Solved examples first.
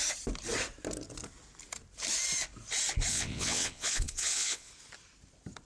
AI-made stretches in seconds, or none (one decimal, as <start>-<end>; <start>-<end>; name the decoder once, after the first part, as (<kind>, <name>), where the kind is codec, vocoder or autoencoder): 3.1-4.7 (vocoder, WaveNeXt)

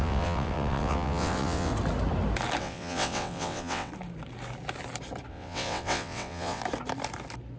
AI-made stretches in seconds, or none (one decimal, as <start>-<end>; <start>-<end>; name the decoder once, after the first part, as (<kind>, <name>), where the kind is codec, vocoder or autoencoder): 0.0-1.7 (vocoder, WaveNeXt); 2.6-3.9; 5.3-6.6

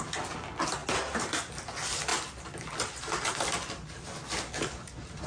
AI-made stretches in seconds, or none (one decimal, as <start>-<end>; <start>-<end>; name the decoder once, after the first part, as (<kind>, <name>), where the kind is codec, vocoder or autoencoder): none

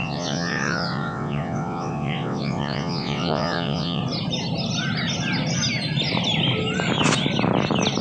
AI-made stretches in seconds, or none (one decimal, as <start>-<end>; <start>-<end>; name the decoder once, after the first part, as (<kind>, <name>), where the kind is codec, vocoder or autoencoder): 0.0-4.0 (vocoder, WaveNeXt)

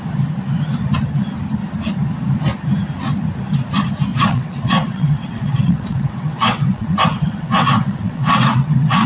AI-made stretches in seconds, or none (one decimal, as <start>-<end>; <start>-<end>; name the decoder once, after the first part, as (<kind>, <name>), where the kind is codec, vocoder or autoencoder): 4.1-9.1 (vocoder, WaveNeXt)